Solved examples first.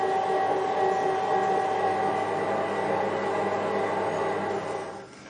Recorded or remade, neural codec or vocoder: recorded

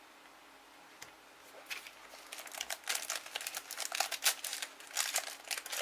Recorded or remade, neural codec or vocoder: recorded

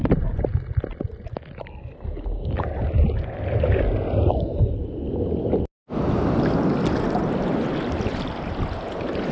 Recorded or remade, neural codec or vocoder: recorded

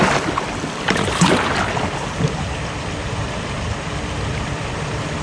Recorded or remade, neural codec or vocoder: recorded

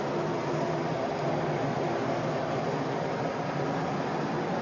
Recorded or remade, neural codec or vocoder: recorded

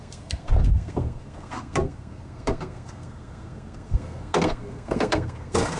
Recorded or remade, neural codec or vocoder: remade, codec, SNAC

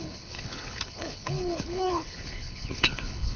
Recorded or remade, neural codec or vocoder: remade, codec, HILCodec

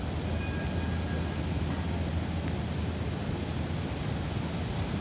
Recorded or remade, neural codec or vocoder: recorded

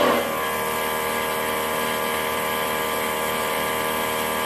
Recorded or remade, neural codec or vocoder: recorded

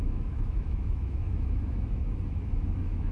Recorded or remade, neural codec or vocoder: remade, autoencoder, DAC-VAE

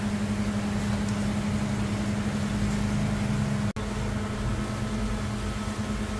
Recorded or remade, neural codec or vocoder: recorded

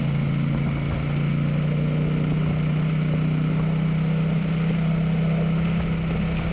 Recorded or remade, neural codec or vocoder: recorded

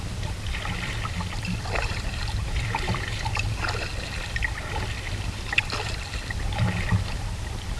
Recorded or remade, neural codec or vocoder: remade, vocoder, BigVGAN v2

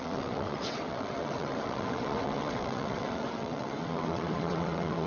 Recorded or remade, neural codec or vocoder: remade, vocoder, WaveNeXt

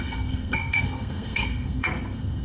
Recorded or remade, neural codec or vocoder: remade, codec, SNAC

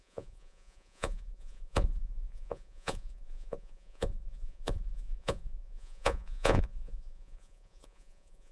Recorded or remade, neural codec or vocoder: remade, vocoder, Vocos